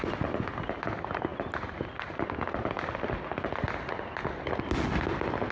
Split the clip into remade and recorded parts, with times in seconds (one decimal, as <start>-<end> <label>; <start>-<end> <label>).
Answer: 0.0-5.5 recorded